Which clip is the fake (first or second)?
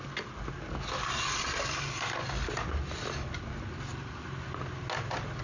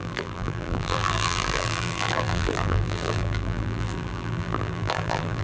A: second